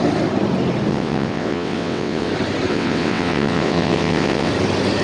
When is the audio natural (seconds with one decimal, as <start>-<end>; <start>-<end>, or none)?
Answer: 0.0-0.9; 2.3-2.7; 4.5-5.0